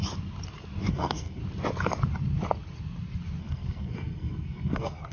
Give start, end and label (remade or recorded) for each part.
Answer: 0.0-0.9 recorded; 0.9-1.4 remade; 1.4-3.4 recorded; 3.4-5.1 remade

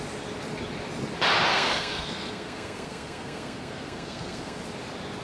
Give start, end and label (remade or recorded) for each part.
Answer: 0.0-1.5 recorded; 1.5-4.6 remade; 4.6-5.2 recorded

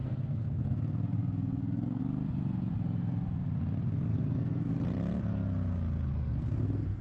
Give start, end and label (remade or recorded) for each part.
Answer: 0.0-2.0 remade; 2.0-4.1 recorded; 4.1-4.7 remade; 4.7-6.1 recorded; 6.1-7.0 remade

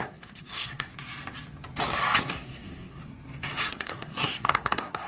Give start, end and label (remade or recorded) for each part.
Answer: 0.0-0.9 remade; 0.9-2.2 recorded; 2.2-3.0 remade; 3.0-3.7 recorded; 3.7-5.1 remade

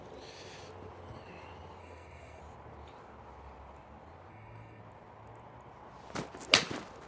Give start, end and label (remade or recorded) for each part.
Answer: 0.0-1.8 recorded; 1.8-2.4 remade; 2.4-4.3 recorded; 4.3-4.8 remade; 4.8-7.1 recorded

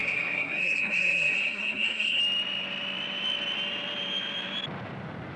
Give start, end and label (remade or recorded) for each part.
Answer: 0.0-2.2 remade; 2.2-5.4 recorded

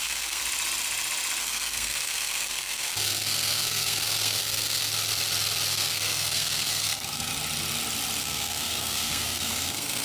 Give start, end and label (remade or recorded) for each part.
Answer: 0.0-0.4 remade; 0.4-1.4 recorded; 1.4-4.9 remade; 4.9-5.7 recorded; 5.7-7.3 remade; 7.3-8.2 recorded; 8.2-10.0 remade

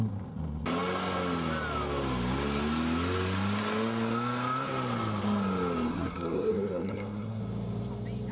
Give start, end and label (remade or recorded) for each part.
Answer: 0.0-5.9 recorded; 5.9-7.4 remade; 7.4-8.3 recorded